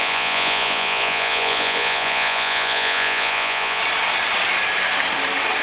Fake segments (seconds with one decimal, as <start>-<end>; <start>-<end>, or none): 0.0-3.8